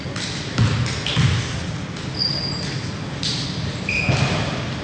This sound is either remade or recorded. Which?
recorded